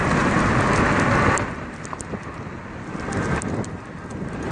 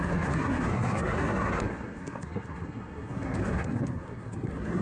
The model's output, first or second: second